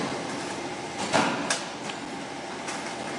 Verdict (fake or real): real